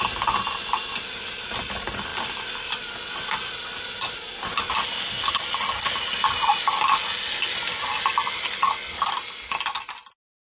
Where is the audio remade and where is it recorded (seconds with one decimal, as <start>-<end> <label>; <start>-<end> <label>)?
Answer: 0.0-10.5 recorded